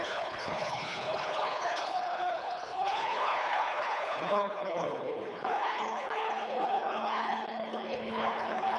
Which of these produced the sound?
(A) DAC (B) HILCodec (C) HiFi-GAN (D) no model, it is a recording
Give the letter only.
B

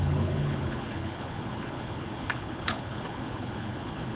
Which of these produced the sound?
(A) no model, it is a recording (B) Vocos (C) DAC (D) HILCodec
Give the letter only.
D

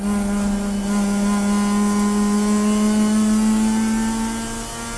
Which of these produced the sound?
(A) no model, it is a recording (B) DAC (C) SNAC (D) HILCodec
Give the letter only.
A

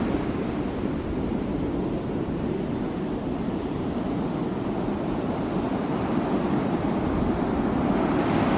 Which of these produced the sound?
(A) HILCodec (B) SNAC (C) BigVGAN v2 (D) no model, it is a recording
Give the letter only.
D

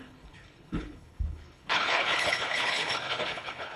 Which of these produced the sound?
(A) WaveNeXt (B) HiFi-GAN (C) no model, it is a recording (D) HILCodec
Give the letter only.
D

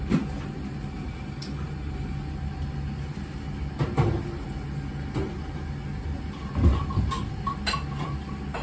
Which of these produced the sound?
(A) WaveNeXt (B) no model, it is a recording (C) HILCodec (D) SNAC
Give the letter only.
B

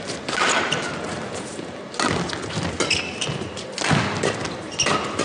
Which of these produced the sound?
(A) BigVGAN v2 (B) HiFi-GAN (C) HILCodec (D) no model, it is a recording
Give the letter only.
D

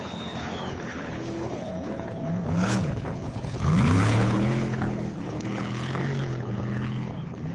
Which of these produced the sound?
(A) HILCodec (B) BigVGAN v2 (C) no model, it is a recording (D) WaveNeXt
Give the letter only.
A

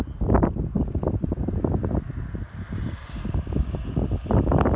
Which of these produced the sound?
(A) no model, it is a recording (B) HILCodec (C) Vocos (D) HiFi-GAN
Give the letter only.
A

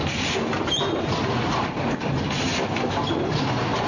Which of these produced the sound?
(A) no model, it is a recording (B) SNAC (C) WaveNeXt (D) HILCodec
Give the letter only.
A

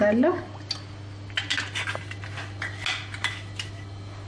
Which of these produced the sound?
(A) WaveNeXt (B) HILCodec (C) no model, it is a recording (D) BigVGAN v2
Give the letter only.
C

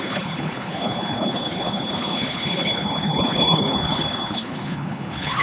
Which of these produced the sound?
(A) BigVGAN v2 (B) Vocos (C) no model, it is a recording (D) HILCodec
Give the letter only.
D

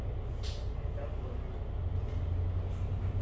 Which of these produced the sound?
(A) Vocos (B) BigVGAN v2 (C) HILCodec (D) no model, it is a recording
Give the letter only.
D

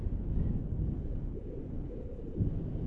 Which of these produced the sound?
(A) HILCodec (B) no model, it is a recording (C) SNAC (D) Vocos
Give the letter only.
B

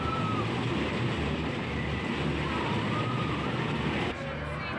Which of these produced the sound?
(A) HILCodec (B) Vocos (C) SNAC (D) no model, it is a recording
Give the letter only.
D